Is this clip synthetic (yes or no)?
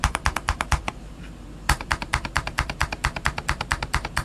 yes